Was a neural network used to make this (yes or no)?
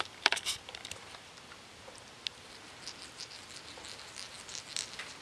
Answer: yes